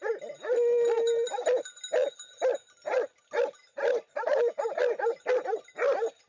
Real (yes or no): yes